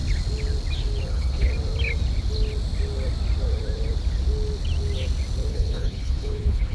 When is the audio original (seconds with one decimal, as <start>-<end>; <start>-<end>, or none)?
0.0-1.1; 1.5-5.5